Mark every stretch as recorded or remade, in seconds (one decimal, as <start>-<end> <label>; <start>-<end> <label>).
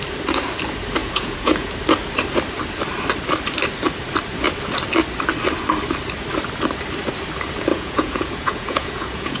0.0-1.0 recorded; 1.0-1.7 remade; 1.7-7.7 recorded; 7.7-9.4 remade